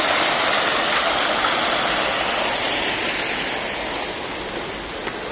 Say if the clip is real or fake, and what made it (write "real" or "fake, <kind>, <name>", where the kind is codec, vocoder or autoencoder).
real